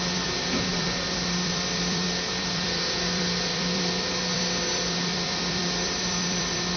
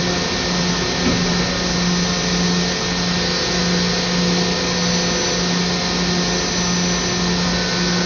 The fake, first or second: first